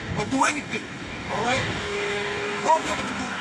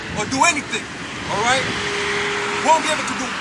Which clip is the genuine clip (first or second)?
second